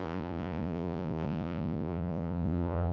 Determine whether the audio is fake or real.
fake